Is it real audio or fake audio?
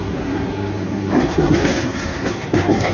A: fake